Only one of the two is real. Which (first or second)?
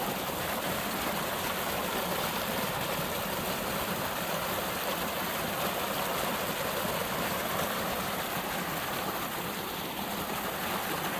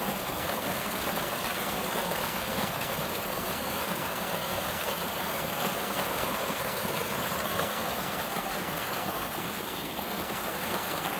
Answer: first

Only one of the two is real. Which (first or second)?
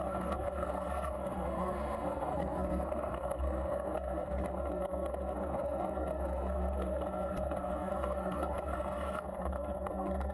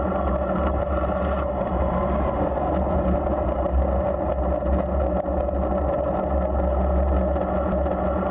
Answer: second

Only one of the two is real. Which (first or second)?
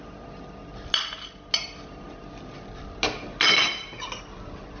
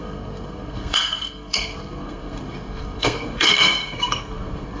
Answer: first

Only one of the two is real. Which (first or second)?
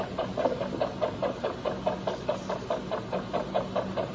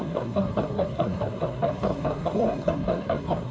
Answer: first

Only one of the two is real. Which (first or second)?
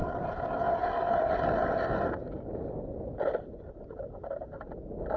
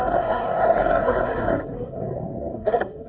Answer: first